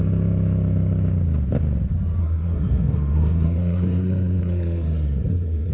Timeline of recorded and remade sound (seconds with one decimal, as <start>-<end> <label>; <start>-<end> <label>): 0.0-2.2 recorded; 2.2-5.7 remade